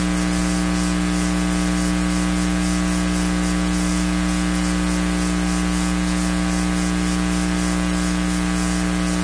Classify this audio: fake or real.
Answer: real